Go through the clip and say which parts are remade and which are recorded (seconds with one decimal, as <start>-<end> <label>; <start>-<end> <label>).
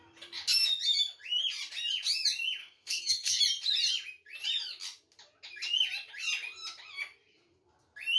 0.0-2.6 recorded; 2.6-3.4 remade; 3.4-8.2 recorded